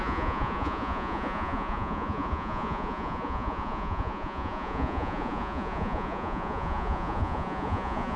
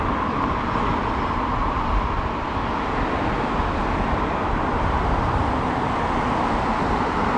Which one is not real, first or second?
first